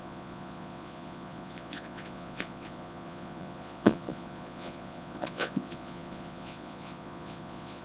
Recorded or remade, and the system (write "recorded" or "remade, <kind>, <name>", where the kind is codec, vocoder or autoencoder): remade, vocoder, Vocos